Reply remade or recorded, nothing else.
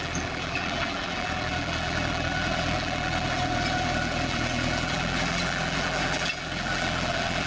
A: remade